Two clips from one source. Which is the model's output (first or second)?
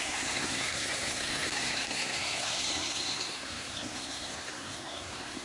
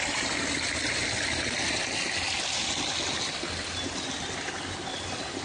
first